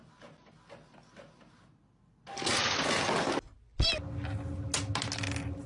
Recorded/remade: recorded